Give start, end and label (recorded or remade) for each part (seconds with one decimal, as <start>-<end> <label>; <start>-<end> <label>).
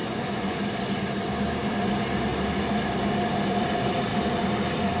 0.0-0.6 remade; 0.6-5.0 recorded